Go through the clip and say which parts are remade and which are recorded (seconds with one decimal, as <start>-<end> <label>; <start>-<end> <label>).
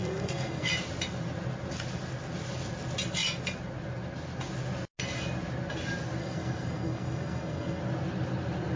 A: 0.0-0.7 remade; 0.7-6.2 recorded; 6.2-7.8 remade; 7.8-8.8 recorded